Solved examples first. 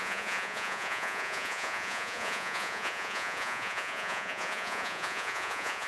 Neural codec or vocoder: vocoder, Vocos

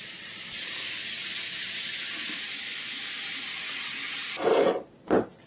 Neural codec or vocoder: none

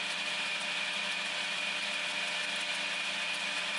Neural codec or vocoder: none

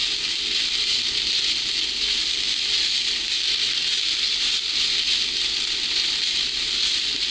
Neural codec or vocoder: none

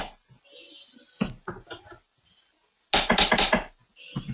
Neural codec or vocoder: none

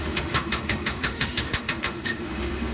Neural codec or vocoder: autoencoder, DAC-VAE